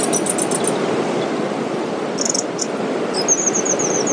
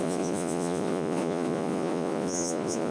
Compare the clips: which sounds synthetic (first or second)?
second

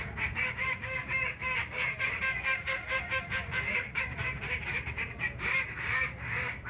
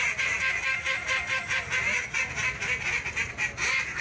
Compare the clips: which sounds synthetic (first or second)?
first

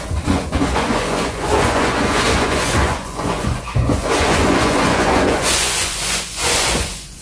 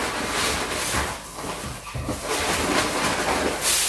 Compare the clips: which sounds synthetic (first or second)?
first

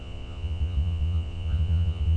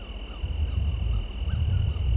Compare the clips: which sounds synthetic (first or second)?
first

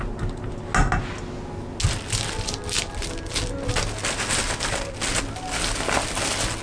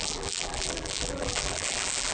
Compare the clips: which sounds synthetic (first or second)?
second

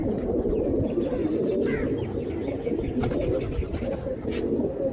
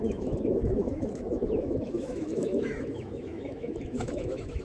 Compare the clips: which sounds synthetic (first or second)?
second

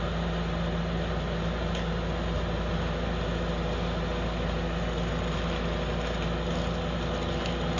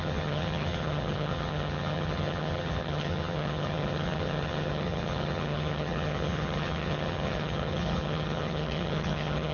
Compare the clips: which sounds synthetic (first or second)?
second